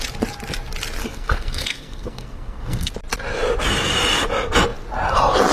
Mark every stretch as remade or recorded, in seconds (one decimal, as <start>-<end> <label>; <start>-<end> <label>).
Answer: 0.0-1.0 recorded; 1.0-2.9 remade; 2.9-5.5 recorded